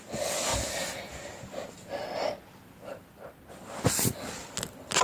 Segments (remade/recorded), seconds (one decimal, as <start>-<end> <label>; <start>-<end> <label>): 0.0-5.0 recorded